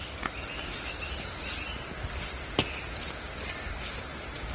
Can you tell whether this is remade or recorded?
recorded